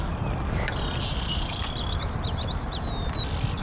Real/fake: real